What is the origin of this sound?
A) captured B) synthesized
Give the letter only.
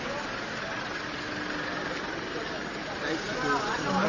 A